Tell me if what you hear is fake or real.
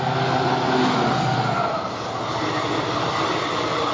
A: real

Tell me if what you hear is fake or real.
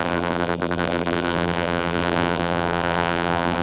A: fake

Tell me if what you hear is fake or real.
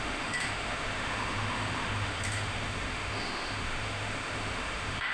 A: fake